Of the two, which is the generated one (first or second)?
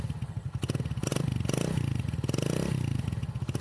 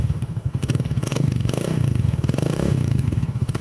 second